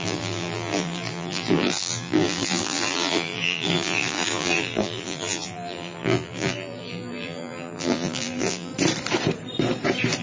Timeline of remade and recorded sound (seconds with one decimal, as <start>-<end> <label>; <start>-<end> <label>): 0.0-8.7 remade; 8.7-10.2 recorded